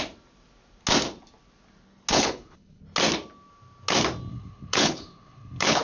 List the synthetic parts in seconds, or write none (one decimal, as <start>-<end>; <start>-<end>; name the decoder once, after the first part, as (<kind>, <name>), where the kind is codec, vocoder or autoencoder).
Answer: 2.1-2.8 (codec, HILCodec); 4.3-5.8